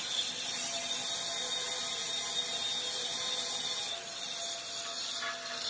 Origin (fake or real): real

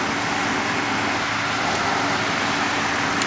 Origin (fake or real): real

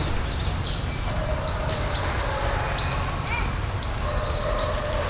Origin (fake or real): real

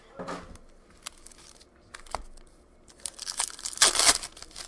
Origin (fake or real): real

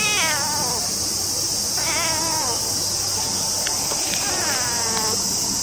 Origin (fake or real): real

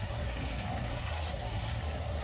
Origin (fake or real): fake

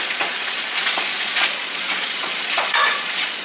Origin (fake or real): fake